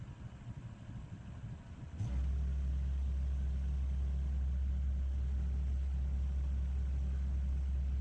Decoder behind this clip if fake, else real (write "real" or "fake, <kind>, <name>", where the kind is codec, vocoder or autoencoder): real